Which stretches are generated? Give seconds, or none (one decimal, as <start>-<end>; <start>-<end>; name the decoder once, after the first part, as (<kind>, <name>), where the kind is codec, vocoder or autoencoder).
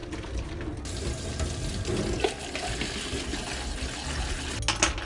none